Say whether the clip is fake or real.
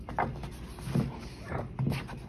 real